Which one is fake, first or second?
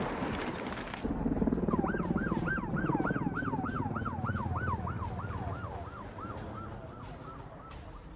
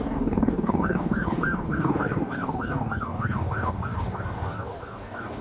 second